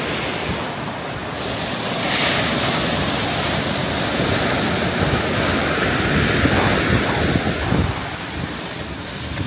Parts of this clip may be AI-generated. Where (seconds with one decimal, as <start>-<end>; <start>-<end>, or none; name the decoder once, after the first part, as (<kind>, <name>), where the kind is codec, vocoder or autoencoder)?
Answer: none